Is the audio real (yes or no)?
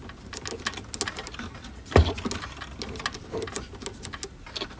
yes